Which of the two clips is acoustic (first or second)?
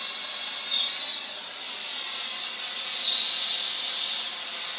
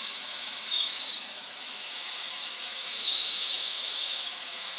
first